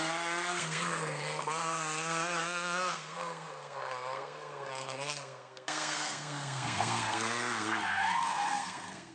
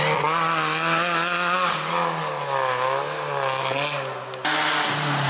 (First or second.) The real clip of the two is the second